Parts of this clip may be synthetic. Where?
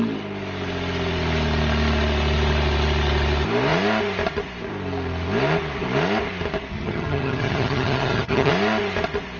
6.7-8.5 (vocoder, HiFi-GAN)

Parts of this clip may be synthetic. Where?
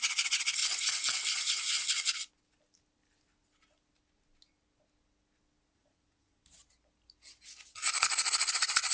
0.0-0.6 (vocoder, Vocos); 5.7-6.6; 8.5-8.9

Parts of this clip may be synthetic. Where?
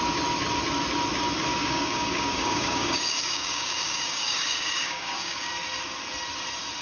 1.5-5.5 (codec, DAC)